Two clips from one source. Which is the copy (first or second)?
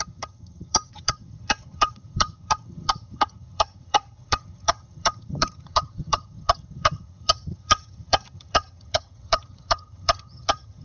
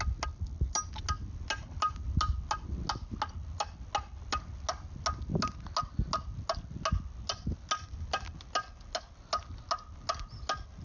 first